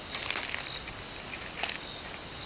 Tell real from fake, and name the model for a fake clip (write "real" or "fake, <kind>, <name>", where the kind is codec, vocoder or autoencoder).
real